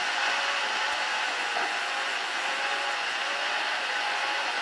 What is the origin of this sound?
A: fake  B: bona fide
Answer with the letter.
A